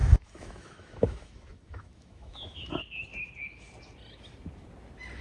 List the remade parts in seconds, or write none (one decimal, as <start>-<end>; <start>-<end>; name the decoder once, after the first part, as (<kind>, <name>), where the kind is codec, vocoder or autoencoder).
0.0-2.7 (autoencoder, DAC-VAE)